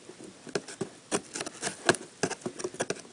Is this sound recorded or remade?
recorded